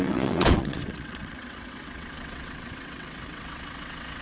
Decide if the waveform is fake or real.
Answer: fake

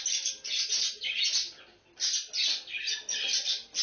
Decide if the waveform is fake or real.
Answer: real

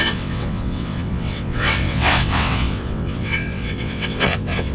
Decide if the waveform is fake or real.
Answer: fake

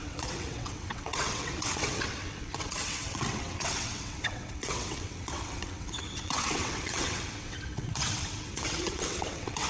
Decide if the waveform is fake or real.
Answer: fake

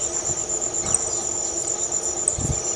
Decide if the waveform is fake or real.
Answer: real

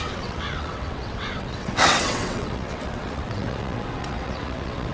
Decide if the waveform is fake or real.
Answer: fake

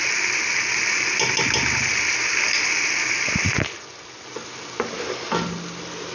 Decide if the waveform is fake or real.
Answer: real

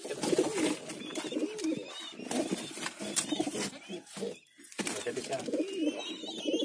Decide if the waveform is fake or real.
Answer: real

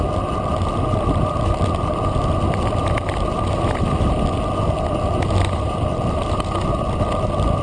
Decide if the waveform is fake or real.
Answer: real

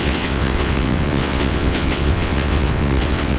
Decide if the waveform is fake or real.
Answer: fake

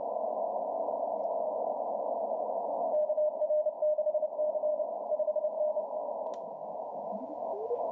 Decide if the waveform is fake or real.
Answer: real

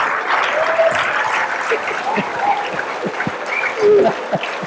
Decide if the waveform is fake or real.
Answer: real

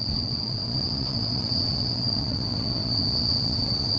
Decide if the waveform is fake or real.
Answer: fake